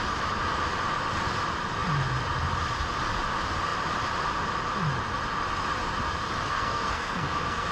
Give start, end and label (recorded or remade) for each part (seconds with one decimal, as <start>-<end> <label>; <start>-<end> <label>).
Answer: 0.0-6.5 recorded; 6.5-7.7 remade